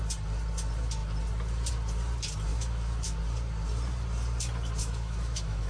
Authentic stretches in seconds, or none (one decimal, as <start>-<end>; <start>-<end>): 0.0-2.5; 3.2-4.8